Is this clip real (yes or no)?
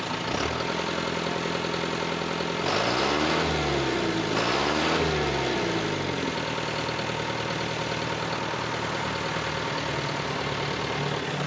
yes